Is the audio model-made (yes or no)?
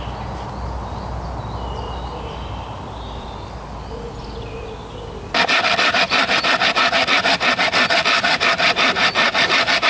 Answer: no